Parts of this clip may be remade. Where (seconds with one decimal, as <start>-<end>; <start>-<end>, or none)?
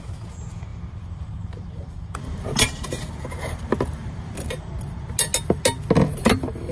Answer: 0.7-4.7